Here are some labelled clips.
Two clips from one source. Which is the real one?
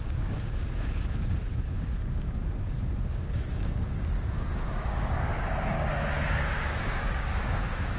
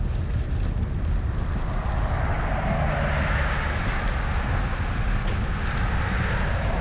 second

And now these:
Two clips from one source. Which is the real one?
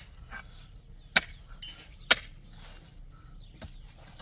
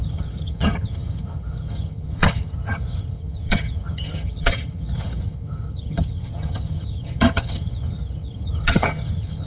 first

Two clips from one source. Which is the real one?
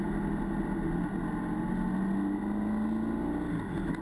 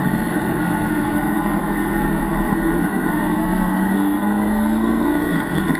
first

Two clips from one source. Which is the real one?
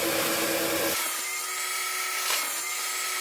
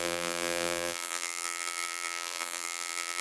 first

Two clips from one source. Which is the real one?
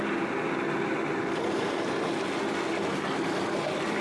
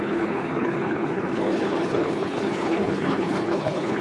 first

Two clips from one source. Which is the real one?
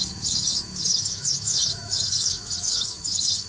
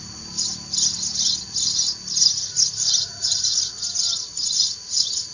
second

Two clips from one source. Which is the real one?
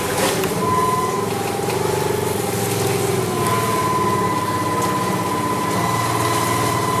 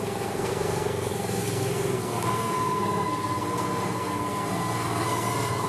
first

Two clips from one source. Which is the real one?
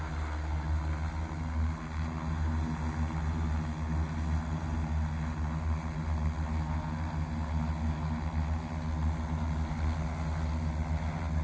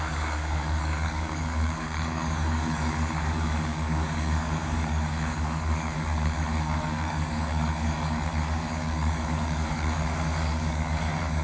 first